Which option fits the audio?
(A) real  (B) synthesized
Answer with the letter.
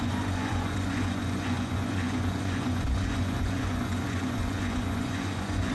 B